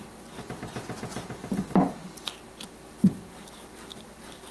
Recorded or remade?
recorded